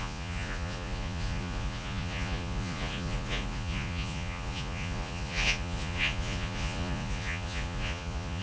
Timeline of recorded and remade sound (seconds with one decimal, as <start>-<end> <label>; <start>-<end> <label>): 0.0-8.4 remade